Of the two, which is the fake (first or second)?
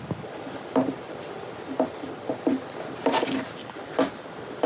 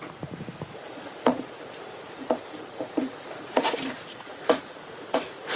second